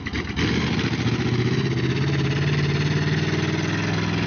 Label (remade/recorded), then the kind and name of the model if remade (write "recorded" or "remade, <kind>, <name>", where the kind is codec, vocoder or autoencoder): recorded